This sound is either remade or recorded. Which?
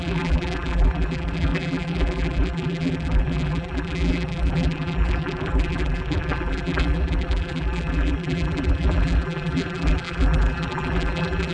remade